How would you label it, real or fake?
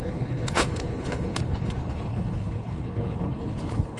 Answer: fake